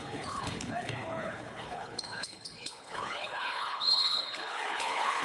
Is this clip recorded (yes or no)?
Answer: no